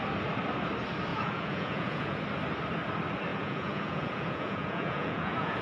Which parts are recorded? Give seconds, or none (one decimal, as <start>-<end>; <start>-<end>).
0.0-1.1; 2.2-3.3